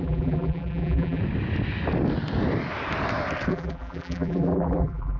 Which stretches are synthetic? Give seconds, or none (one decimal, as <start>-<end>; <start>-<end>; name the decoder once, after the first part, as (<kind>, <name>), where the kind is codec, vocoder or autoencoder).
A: 0.0-1.2 (vocoder, BigVGAN v2); 3.5-5.2